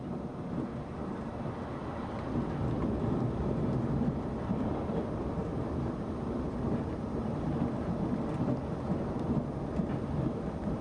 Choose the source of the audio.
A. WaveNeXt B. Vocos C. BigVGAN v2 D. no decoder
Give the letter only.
D